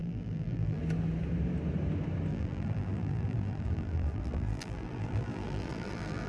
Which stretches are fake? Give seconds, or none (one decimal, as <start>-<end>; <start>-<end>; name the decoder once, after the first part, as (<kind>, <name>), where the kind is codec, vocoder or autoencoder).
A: 0.0-0.8 (vocoder, BigVGAN v2); 2.3-6.3